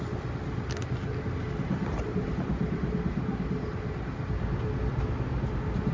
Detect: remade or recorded recorded